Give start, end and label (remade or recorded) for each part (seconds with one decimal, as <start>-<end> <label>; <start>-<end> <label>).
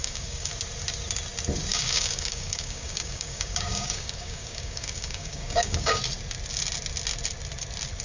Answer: 0.0-0.5 remade; 0.5-1.7 recorded; 1.7-6.0 remade; 6.0-8.0 recorded